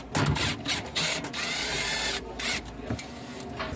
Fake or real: real